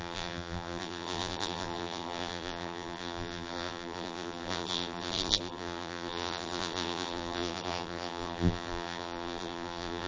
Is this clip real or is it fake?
fake